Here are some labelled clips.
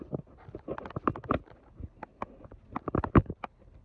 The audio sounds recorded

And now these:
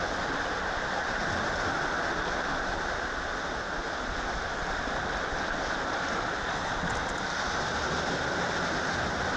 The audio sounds recorded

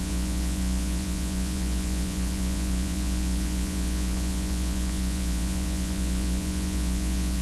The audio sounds remade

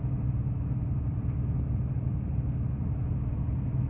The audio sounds recorded